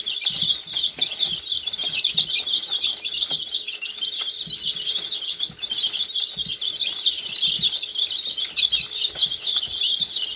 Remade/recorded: recorded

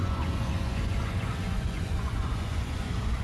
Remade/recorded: remade